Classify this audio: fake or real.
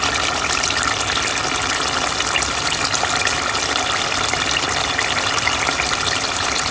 real